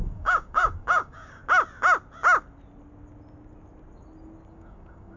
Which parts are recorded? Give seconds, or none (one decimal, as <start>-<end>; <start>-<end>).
1.4-4.5